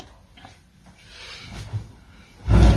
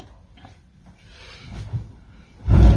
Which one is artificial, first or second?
second